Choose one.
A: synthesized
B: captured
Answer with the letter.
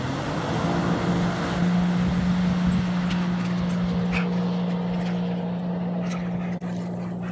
B